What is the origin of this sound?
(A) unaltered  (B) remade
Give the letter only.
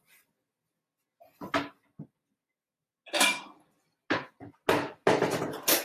A